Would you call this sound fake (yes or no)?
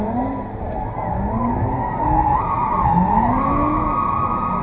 no